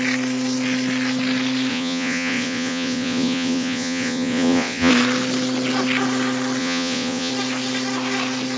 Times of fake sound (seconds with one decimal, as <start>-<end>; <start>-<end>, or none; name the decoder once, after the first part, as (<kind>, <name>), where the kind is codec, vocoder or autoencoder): 1.7-4.9 (vocoder, Vocos); 6.6-7.3